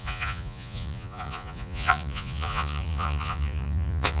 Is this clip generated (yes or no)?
yes